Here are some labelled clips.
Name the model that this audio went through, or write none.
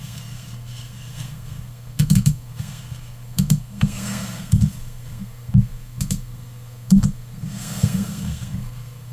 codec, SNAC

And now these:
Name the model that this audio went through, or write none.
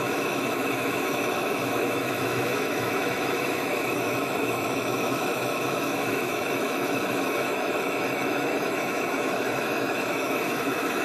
autoencoder, DAC-VAE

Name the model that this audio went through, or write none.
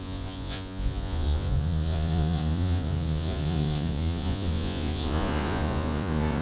vocoder, Vocos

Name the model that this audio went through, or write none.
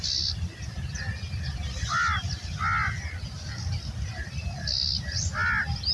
none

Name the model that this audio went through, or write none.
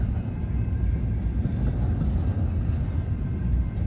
vocoder, BigVGAN v2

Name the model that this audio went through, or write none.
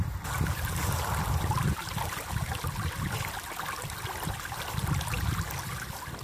none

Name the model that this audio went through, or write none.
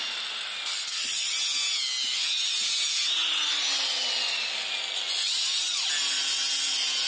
none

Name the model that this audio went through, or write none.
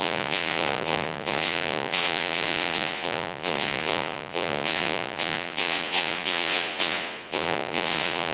vocoder, Vocos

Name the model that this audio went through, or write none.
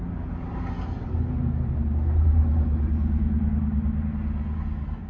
none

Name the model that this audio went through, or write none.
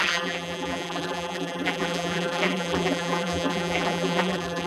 vocoder, BigVGAN v2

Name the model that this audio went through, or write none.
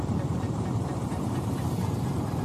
vocoder, BigVGAN v2